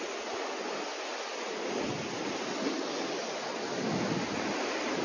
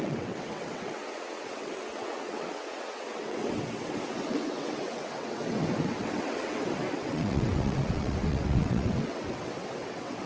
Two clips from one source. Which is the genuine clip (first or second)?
first